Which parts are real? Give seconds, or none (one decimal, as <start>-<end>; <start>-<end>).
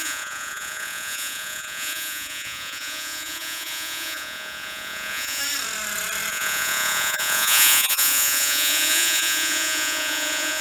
5.4-6.3